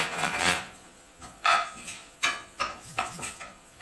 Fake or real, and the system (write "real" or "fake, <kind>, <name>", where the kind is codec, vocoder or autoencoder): fake, vocoder, Vocos